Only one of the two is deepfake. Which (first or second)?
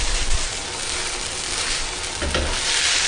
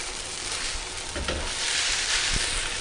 second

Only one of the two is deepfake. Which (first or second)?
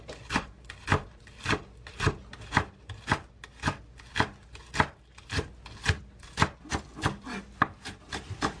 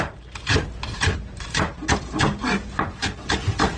second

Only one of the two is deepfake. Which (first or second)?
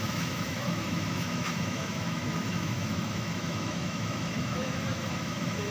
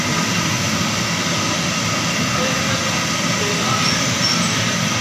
first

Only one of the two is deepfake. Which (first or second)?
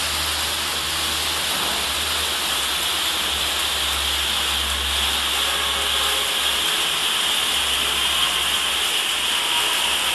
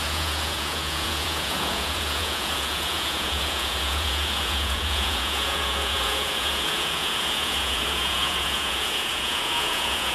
second